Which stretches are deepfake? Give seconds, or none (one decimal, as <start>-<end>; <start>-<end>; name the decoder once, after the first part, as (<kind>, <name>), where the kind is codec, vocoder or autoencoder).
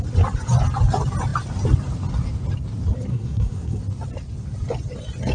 3.1-3.8 (codec, SNAC)